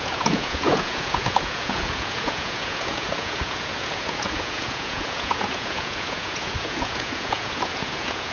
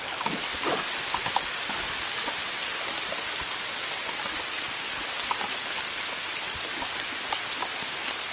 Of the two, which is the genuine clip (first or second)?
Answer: second